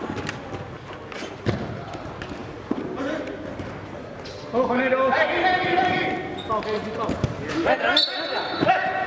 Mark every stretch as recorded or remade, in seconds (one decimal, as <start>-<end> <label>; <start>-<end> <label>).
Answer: 0.0-9.1 recorded